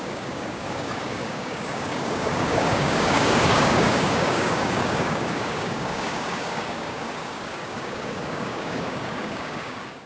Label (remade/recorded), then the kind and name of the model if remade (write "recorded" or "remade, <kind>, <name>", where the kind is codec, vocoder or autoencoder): remade, codec, DAC